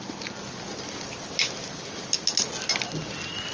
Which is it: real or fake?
real